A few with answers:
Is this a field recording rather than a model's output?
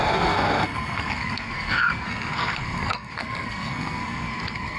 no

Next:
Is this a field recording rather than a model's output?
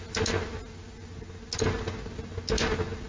yes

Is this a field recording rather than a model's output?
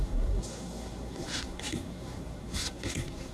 no